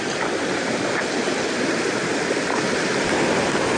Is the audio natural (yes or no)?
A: yes